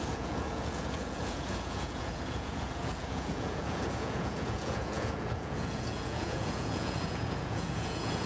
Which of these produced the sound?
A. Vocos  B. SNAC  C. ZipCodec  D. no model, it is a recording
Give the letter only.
A